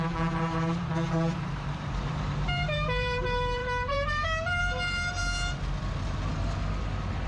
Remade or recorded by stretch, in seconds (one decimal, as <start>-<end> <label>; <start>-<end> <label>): 0.0-5.2 remade; 5.2-7.3 recorded